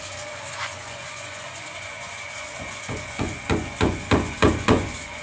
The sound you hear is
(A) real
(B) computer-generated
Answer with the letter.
B